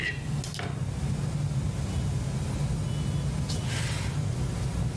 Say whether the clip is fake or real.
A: real